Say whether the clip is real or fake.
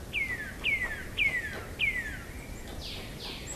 real